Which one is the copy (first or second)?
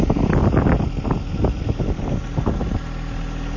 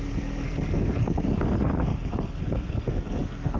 second